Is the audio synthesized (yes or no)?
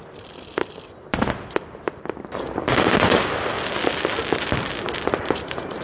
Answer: yes